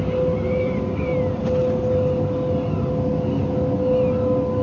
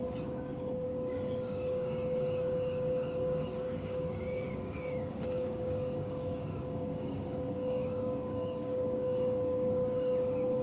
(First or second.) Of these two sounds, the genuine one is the first